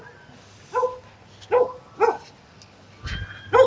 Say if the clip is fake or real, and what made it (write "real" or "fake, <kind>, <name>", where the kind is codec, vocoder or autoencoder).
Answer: real